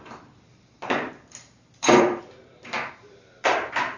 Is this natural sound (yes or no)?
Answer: no